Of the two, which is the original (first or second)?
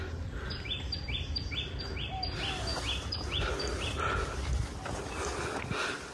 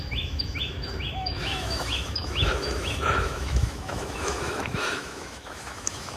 first